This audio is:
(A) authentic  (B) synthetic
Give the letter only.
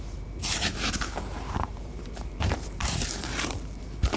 B